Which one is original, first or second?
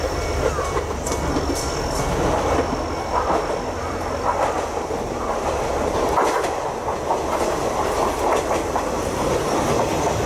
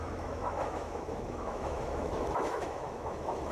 first